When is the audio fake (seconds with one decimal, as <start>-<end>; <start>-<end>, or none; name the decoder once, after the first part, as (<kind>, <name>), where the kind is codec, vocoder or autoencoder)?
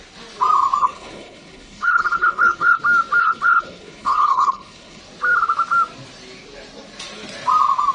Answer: 0.8-2.8 (codec, HILCodec); 3.2-5.0